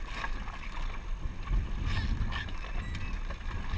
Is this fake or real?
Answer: real